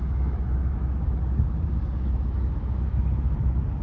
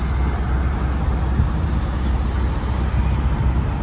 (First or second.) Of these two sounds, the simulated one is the first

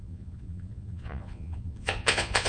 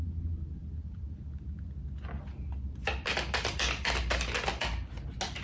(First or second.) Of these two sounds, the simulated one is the first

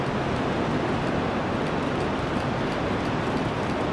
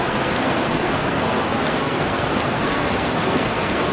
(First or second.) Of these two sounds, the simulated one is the second